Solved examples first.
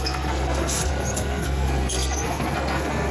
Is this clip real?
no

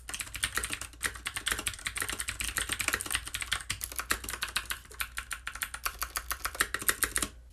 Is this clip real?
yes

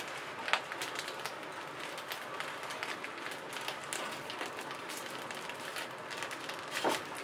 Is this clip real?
yes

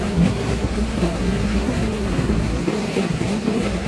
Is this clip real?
no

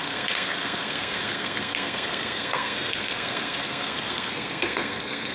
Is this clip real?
no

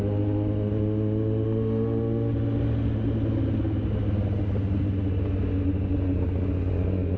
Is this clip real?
yes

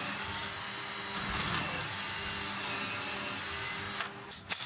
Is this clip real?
yes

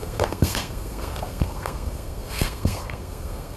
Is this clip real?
no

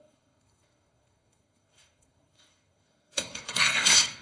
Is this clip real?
no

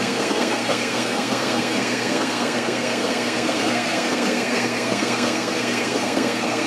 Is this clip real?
no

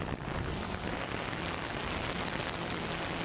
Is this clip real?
yes